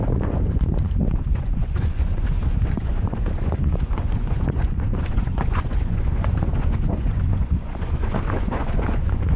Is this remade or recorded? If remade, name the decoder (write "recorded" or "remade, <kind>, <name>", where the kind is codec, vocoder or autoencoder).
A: remade, vocoder, Vocos